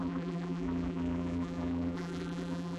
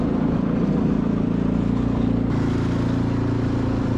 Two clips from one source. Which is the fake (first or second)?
first